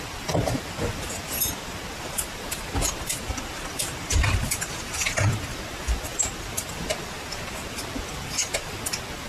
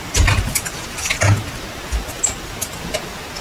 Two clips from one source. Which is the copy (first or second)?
first